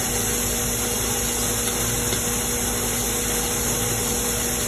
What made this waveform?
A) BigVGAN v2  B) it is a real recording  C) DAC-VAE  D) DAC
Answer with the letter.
B